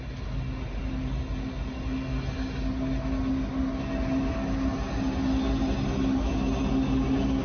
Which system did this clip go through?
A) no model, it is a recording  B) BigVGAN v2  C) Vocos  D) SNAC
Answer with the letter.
A